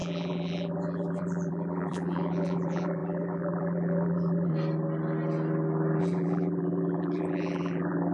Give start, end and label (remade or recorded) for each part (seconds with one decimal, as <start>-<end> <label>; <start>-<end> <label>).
0.0-4.5 remade; 4.5-6.0 recorded; 6.0-8.1 remade